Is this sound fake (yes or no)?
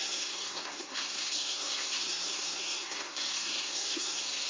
yes